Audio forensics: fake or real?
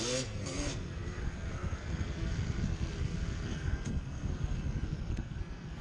fake